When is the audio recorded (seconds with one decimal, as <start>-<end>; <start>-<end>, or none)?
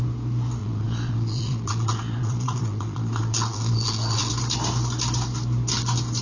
0.0-0.6; 4.3-6.2